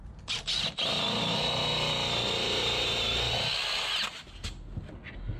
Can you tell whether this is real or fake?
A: real